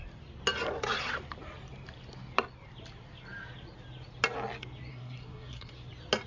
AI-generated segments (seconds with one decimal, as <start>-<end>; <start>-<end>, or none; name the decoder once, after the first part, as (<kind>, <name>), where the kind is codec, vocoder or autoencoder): 4.9-5.7 (codec, SNAC)